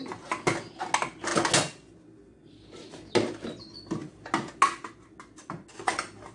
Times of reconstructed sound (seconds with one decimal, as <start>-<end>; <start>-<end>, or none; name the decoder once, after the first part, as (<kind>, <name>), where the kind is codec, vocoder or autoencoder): none